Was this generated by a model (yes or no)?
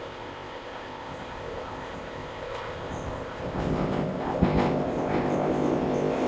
yes